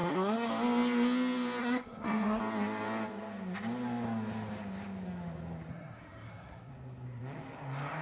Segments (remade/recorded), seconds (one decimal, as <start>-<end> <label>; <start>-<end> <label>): 0.0-0.5 remade; 0.5-1.6 recorded; 1.6-2.4 remade; 2.4-5.7 recorded; 5.7-6.7 remade; 6.7-8.0 recorded